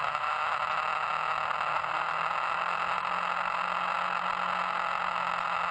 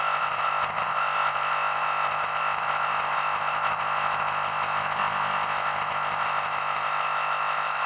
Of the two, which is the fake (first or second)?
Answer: second